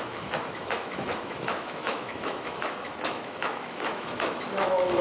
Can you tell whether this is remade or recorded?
remade